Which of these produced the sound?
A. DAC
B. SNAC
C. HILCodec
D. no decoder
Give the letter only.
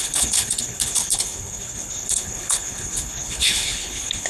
C